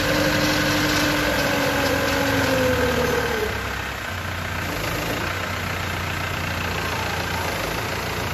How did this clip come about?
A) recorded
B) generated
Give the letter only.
A